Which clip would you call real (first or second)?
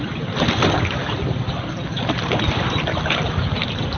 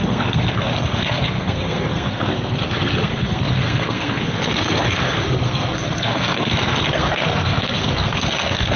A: first